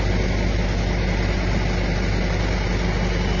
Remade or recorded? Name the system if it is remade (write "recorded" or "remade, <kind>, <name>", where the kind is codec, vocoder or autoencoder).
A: recorded